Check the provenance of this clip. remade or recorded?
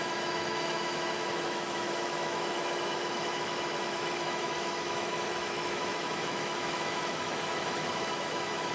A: remade